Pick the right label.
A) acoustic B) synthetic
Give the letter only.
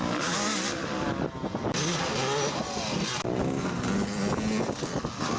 A